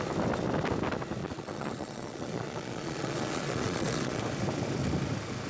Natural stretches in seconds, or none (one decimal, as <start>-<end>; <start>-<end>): 0.0-1.2; 4.2-5.5